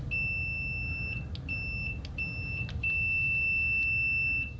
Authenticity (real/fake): real